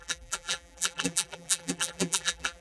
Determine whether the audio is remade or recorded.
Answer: remade